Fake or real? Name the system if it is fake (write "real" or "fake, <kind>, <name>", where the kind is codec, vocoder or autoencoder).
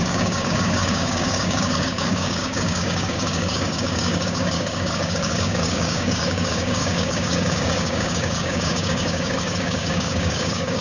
fake, codec, DAC